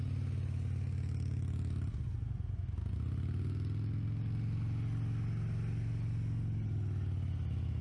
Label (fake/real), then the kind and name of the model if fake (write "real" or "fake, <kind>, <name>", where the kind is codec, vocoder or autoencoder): real